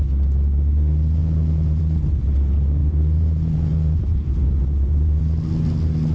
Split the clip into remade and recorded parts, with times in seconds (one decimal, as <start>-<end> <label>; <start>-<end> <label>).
0.0-1.2 recorded; 1.2-1.8 remade; 1.8-2.8 recorded; 2.8-5.2 remade; 5.2-6.1 recorded